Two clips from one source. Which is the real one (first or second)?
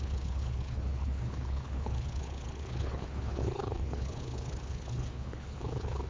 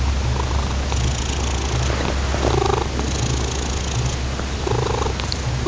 second